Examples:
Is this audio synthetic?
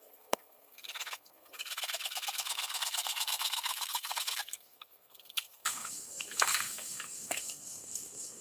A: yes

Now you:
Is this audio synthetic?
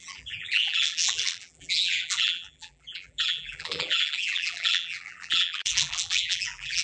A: yes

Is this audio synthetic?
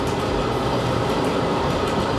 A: yes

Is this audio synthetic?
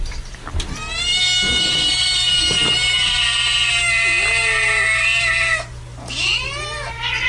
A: no